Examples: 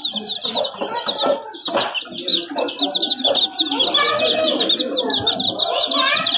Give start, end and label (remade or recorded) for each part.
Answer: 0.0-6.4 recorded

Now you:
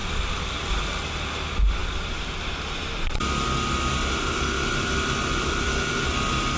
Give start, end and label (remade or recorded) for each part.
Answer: 0.0-0.7 remade; 0.7-5.3 recorded; 5.3-6.0 remade; 6.0-6.6 recorded